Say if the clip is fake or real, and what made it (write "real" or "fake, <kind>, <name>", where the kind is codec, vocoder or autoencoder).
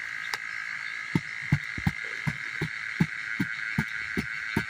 real